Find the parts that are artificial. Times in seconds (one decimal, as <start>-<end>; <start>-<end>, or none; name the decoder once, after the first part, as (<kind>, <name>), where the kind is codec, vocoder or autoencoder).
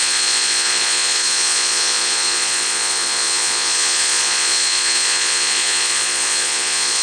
0.0-7.0 (vocoder, Vocos)